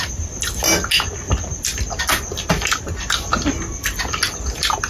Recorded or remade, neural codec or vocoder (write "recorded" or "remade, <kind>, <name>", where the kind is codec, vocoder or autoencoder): recorded